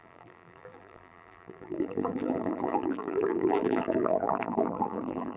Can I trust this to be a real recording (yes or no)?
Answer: no